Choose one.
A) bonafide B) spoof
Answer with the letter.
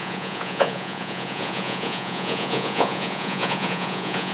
B